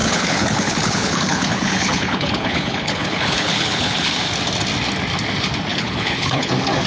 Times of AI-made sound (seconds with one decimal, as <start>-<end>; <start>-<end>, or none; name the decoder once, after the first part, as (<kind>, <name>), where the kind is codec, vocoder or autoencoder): 0.0-4.1 (codec, HILCodec); 5.7-6.5